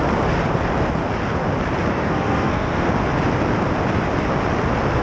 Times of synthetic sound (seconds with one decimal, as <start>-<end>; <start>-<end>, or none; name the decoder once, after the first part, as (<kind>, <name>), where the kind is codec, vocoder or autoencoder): 1.9-2.9 (codec, SNAC)